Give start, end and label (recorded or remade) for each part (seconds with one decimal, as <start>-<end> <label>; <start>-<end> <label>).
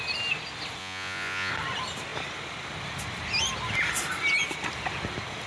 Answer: 0.0-0.8 recorded; 0.8-1.5 remade; 1.5-5.5 recorded